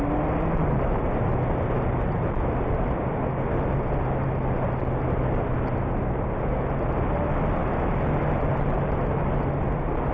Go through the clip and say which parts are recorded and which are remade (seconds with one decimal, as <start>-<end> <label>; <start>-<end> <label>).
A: 0.0-10.1 recorded